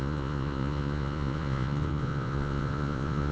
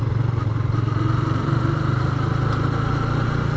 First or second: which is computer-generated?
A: first